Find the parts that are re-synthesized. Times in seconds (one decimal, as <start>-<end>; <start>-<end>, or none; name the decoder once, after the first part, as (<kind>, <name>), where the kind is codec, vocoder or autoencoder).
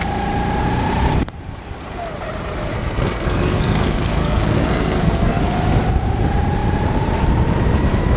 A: 2.7-5.4 (codec, SNAC)